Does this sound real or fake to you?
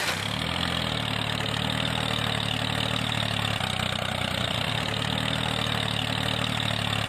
real